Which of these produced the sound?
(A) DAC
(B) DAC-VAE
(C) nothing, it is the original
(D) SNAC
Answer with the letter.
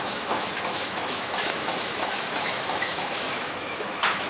B